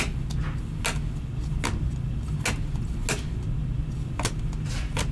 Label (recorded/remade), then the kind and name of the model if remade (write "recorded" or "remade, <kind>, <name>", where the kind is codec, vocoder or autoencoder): recorded